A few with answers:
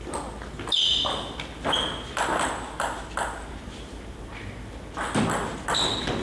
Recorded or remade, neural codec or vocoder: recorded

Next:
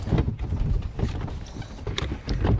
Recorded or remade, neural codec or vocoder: recorded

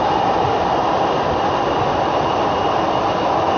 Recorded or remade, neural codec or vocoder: recorded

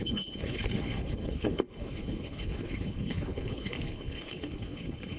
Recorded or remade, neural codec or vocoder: remade, codec, HILCodec